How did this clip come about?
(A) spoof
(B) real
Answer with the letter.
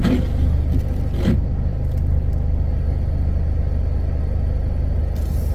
B